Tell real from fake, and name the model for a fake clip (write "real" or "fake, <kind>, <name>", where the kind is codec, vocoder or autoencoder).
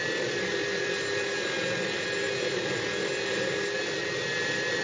real